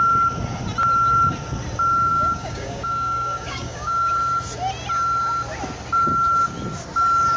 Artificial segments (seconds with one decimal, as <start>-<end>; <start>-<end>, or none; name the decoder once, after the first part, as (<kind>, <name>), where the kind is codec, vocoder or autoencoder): 2.1-4.1 (codec, DAC)